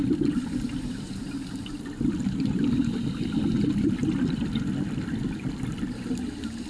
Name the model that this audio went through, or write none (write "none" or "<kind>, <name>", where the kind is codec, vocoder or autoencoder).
vocoder, BigVGAN v2